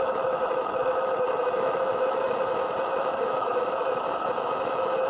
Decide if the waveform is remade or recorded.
remade